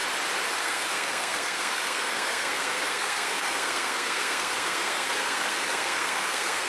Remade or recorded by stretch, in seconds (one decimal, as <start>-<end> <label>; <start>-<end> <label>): 0.0-0.6 recorded; 0.6-6.7 remade